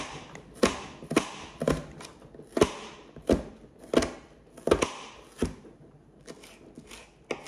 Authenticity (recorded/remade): recorded